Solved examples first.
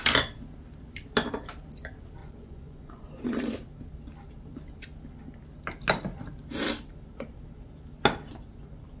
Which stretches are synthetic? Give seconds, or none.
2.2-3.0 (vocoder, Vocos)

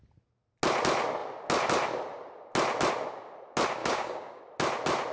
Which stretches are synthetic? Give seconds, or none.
3.8-4.4 (codec, DAC)